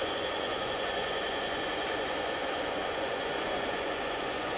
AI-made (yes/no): yes